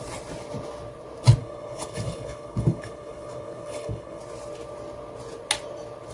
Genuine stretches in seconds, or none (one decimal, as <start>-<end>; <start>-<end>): 0.0-1.4; 4.2-6.1